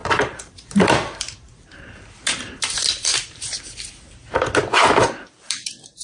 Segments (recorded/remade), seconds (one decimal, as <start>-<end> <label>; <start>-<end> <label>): 0.0-3.5 remade; 3.5-5.3 recorded; 5.3-6.0 remade